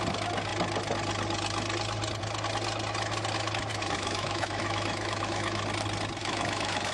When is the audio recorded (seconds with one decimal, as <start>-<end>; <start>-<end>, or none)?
0.0-3.7; 5.6-6.2